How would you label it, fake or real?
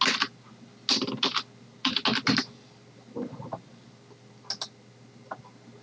real